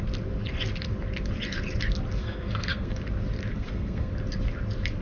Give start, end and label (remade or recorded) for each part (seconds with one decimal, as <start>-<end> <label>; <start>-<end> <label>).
0.0-2.2 recorded; 2.2-3.0 remade; 3.0-3.5 recorded; 3.5-4.1 remade; 4.1-5.0 recorded